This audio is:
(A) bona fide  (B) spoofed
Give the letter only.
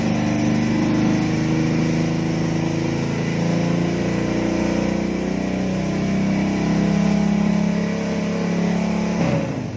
A